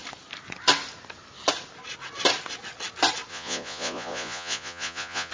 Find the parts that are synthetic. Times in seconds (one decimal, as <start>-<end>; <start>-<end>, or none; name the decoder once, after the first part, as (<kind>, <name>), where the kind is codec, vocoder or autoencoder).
3.3-5.3 (vocoder, Vocos)